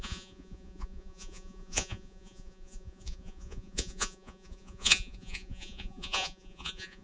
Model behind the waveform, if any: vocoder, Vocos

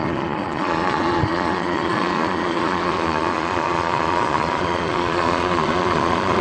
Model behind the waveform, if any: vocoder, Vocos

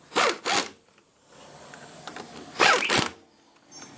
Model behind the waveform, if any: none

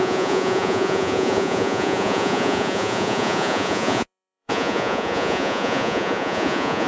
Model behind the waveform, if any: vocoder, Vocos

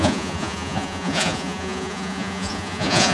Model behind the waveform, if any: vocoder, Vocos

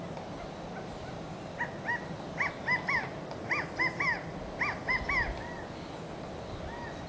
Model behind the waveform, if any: none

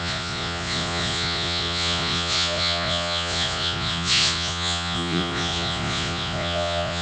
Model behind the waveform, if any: vocoder, Vocos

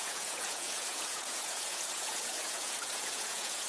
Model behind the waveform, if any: vocoder, Vocos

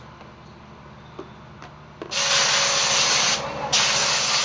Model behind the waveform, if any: none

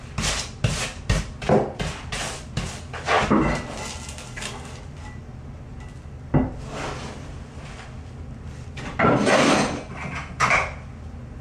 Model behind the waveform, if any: none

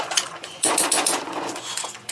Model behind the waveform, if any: vocoder, Vocos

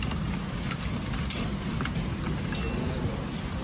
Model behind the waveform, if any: none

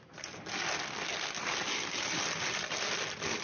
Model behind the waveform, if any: none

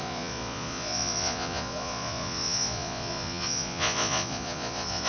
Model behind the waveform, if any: vocoder, Vocos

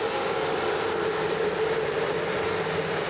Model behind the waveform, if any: none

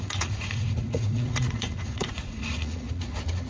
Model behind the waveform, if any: vocoder, Vocos